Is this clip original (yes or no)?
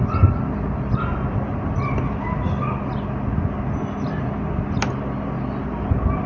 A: yes